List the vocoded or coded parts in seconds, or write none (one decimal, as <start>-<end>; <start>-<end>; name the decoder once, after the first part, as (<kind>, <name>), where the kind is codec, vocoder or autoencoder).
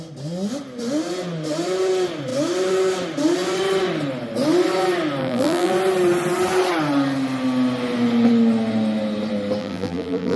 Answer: 5.2-5.7 (vocoder, BigVGAN v2); 9.6-10.4